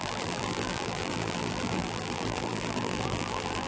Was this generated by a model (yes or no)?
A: yes